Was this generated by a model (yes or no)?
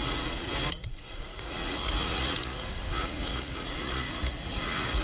yes